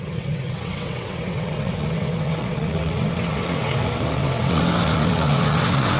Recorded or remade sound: remade